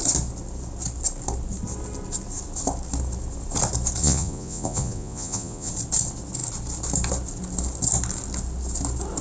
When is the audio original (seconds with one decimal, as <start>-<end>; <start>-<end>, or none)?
0.0-4.0; 5.7-9.2